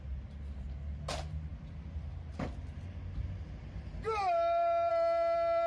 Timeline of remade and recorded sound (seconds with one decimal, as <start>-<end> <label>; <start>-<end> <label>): 0.0-5.7 recorded